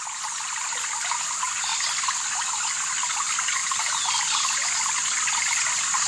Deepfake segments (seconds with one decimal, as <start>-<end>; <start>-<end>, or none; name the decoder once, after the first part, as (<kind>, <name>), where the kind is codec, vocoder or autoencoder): none

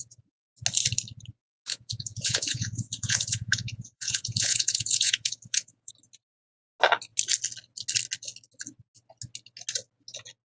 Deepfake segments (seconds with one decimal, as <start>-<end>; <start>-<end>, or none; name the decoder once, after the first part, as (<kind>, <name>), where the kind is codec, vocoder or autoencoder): 1.7-5.9 (vocoder, Vocos)

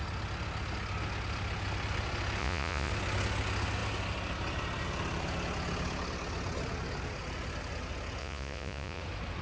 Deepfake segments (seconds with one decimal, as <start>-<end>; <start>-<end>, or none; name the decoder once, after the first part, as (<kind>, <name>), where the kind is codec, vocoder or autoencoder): 2.4-2.9 (vocoder, Vocos); 8.2-9.0

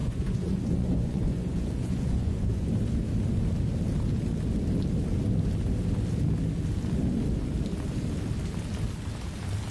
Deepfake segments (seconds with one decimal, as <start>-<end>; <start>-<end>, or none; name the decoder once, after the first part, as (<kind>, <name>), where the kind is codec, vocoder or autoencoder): 0.0-2.7 (vocoder, Vocos)

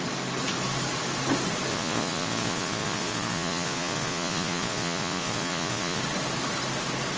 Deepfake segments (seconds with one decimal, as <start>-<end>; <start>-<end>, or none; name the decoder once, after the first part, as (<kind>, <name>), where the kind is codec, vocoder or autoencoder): 1.7-6.0 (vocoder, Vocos)

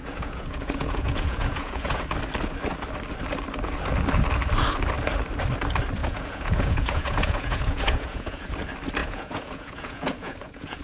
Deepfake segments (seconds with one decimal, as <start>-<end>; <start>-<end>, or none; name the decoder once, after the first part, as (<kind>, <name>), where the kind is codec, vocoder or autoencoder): 0.0-2.0 (vocoder, Vocos); 6.0-8.5; 9.0-10.8